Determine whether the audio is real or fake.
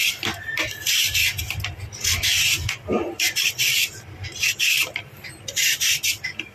fake